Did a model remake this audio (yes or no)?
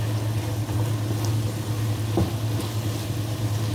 no